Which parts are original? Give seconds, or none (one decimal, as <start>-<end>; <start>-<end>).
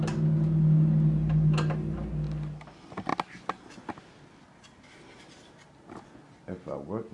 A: 0.0-7.1